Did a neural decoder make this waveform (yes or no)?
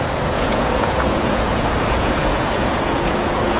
yes